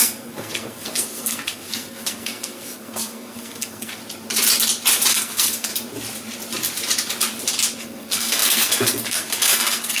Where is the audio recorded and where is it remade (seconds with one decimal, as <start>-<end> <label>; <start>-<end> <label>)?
0.0-4.0 remade; 4.0-5.1 recorded; 5.1-5.7 remade; 5.7-7.8 recorded; 7.8-10.0 remade